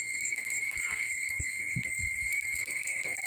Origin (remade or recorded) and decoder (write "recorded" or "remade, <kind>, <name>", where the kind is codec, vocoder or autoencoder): remade, codec, SNAC